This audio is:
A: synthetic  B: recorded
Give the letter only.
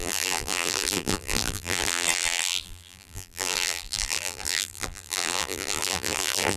A